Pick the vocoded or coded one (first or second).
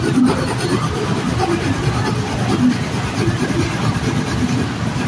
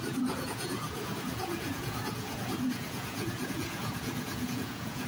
second